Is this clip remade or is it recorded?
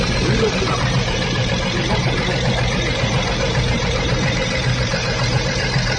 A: remade